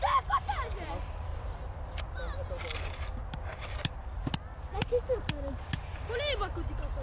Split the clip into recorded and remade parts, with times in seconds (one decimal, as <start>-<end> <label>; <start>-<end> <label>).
0.0-7.0 recorded